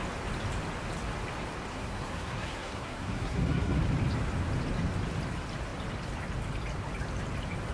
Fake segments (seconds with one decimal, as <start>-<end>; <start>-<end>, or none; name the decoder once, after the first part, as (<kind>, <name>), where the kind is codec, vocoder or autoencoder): 1.7-3.8 (codec, SNAC)